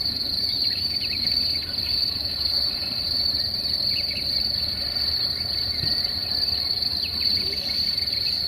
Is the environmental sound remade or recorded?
remade